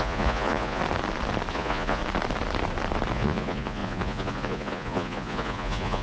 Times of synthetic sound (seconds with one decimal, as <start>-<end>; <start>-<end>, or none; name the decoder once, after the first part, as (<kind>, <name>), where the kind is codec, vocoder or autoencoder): 0.0-0.8 (vocoder, Vocos); 1.5-2.0; 3.1-6.0

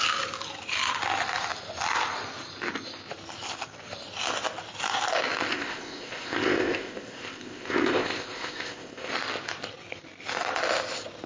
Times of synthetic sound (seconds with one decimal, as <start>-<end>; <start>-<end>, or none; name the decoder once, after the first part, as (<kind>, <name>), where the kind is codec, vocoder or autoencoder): 5.5-9.1 (codec, ZipCodec)

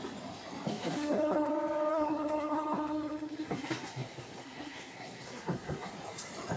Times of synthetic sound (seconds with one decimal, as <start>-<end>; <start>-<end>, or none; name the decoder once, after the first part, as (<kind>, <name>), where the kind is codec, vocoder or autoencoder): 0.7-1.5 (codec, SNAC); 1.9-5.9

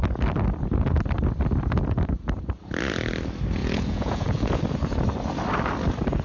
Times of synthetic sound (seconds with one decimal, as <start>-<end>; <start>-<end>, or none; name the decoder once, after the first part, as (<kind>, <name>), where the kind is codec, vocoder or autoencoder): 3.6-4.6 (vocoder, Vocos)

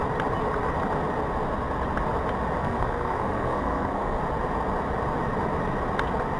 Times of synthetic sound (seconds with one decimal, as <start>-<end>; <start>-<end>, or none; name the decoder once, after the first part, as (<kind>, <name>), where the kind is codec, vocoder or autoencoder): 2.6-4.2 (codec, SNAC)

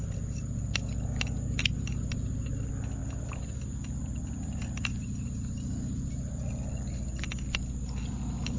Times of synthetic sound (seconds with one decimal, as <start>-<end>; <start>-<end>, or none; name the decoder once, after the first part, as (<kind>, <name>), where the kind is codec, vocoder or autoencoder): none